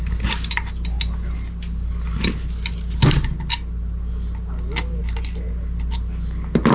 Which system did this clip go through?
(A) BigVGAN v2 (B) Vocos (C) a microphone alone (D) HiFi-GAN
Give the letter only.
C